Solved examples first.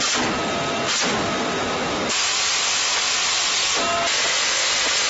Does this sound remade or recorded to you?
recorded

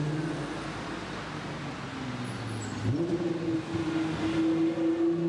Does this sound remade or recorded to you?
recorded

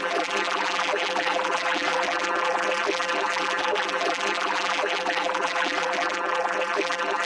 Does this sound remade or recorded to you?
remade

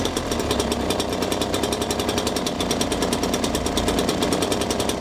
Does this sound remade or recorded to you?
remade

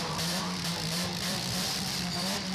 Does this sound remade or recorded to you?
remade